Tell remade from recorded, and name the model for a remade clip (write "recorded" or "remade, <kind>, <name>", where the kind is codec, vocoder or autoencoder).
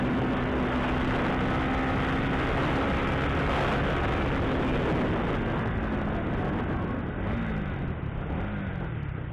recorded